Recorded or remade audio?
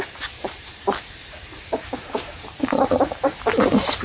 remade